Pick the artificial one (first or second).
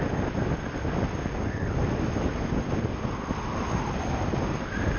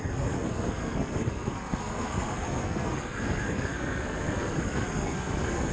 second